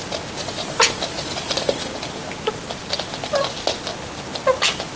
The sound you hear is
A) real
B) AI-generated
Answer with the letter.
A